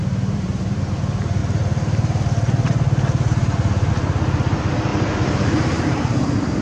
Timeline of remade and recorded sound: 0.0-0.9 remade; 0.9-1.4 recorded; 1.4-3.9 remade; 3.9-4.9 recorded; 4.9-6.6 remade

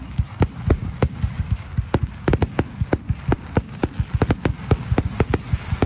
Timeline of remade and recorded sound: 0.0-0.8 recorded; 0.8-1.5 remade; 1.5-3.3 recorded; 3.3-3.9 remade; 3.9-5.9 recorded

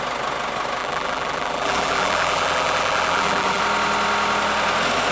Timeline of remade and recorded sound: 0.0-0.8 recorded; 0.8-3.6 remade; 3.6-5.1 recorded

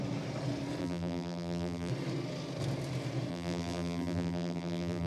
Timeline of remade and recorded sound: 0.0-0.8 recorded; 0.8-1.9 remade; 1.9-3.3 recorded; 3.3-5.1 remade

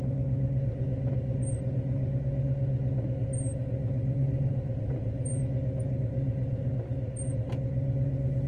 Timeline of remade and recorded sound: 0.0-3.5 recorded; 3.5-5.4 remade; 5.4-8.5 recorded

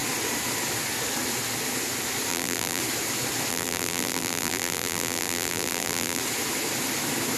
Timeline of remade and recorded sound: 0.0-2.3 recorded; 2.3-2.8 remade; 2.8-3.5 recorded; 3.5-6.2 remade; 6.2-7.4 recorded

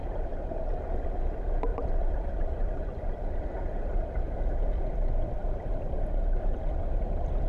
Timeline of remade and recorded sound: 0.0-0.8 remade; 0.8-1.7 recorded; 1.7-3.8 remade; 3.8-5.4 recorded; 5.4-6.7 remade; 6.7-7.5 recorded